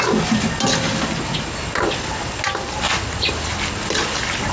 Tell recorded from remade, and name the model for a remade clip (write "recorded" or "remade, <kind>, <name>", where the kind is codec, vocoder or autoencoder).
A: recorded